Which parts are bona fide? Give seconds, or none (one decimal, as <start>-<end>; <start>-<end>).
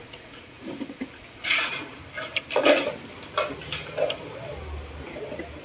2.0-5.6